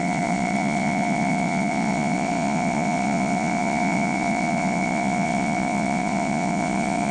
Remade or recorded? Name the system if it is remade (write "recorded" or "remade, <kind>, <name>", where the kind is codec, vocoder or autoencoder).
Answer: remade, vocoder, Vocos